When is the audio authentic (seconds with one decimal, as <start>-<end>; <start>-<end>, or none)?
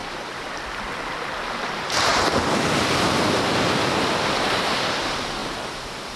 0.0-1.7; 2.1-5.0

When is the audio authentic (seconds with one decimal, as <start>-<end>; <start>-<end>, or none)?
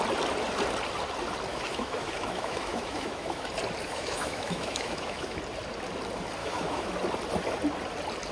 0.0-1.5; 3.5-3.9; 5.4-6.4; 6.9-8.3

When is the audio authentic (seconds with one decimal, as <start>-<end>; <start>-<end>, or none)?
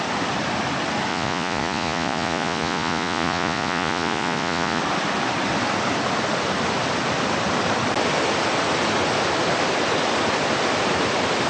0.0-1.1; 4.8-11.5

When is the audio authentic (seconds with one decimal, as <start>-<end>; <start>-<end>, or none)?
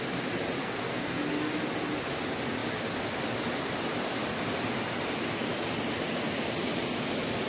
0.0-0.6; 1.2-7.5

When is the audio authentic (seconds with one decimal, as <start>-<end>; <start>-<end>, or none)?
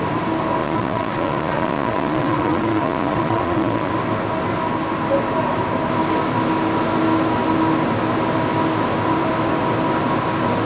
0.0-0.6; 3.9-10.7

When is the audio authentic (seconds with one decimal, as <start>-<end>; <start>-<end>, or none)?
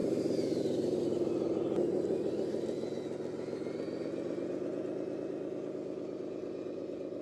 2.3-7.2